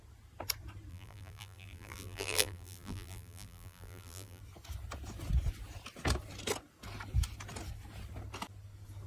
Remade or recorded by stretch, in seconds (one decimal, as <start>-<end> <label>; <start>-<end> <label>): 0.0-0.9 recorded; 0.9-4.4 remade; 4.4-9.1 recorded